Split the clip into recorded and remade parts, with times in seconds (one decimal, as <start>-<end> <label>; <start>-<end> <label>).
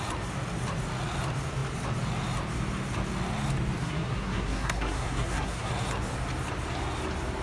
0.0-3.8 recorded; 3.8-5.7 remade; 5.7-7.4 recorded